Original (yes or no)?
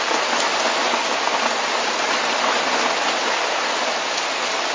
yes